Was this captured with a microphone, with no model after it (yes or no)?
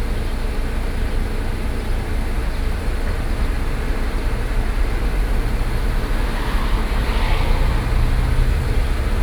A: yes